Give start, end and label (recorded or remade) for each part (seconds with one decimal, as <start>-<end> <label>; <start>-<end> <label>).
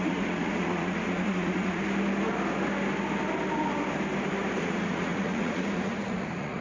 0.0-1.8 remade; 1.8-4.6 recorded; 4.6-6.6 remade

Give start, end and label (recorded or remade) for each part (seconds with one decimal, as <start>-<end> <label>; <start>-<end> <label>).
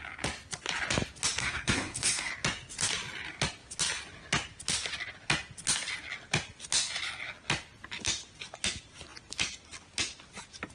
0.0-1.4 recorded; 1.4-2.3 remade; 2.3-10.7 recorded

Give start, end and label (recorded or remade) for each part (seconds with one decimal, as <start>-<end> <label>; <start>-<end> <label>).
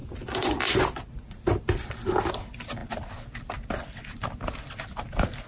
0.0-5.5 recorded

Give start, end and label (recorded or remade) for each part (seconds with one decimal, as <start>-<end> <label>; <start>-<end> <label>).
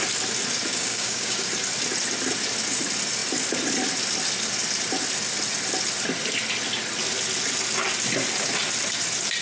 0.0-0.7 recorded; 0.7-1.5 remade; 1.5-9.4 recorded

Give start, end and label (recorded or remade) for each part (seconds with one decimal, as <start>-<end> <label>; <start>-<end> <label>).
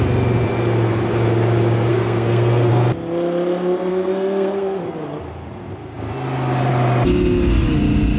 0.0-1.9 recorded; 1.9-2.7 remade; 2.7-3.9 recorded; 3.9-4.8 remade; 4.8-8.2 recorded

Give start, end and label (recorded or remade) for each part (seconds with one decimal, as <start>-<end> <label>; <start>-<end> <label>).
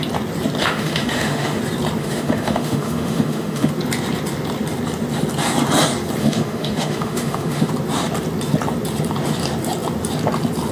0.0-0.6 recorded; 0.6-1.6 remade; 1.6-2.0 recorded; 2.0-3.7 remade; 3.7-6.2 recorded; 6.2-7.7 remade; 7.7-10.7 recorded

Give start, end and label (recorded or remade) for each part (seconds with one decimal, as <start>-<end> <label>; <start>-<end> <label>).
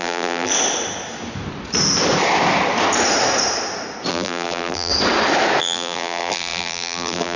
0.0-0.5 remade; 0.5-4.1 recorded; 4.1-4.9 remade; 4.9-5.6 recorded; 5.6-7.4 remade